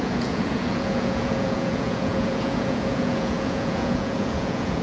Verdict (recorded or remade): remade